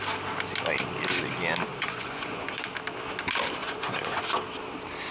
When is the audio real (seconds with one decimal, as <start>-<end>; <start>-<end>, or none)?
0.0-1.7; 2.7-3.6; 4.2-5.1